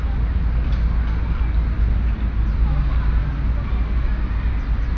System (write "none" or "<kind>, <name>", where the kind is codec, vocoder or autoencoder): none